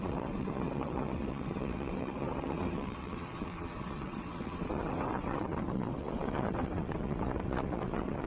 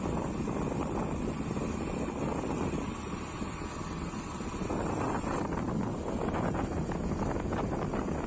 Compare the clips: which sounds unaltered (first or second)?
second